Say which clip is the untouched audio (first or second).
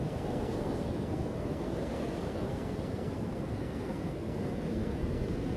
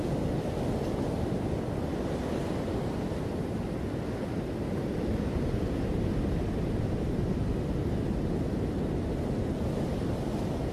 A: second